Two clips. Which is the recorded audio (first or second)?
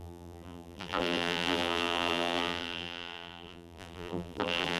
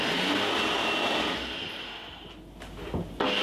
second